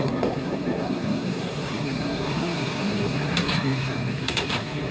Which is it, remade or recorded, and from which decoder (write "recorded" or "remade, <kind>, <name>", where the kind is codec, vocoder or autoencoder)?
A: remade, codec, SNAC